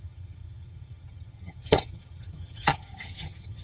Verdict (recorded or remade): remade